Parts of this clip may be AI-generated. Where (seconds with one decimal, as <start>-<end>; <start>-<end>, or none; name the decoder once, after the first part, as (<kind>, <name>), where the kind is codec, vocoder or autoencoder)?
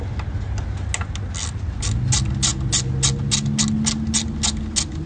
none